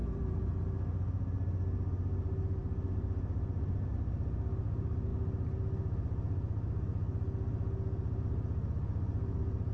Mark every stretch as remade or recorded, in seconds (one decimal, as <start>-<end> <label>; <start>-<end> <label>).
0.0-0.5 remade; 0.5-9.7 recorded